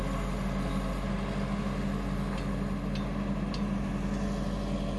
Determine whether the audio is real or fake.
real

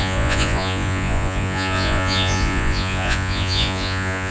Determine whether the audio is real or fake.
fake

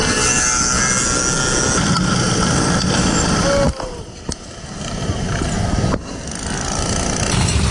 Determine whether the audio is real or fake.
real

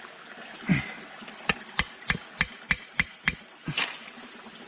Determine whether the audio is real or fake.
real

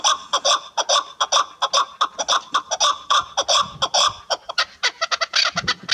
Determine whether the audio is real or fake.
real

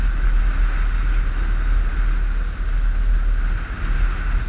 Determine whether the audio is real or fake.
real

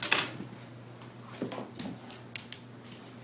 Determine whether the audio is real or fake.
real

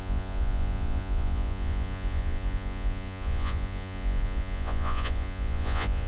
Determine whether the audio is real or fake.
fake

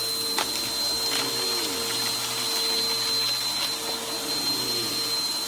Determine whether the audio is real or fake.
real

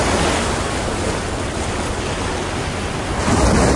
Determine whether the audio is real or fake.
real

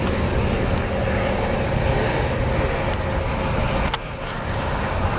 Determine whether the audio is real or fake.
real